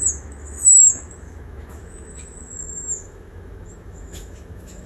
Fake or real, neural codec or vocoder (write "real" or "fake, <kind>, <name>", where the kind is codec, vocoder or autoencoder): fake, autoencoder, DAC-VAE